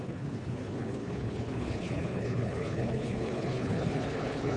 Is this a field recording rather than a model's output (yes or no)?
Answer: no